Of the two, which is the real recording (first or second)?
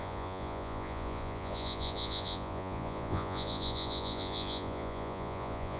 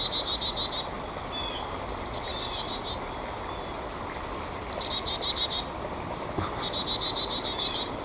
second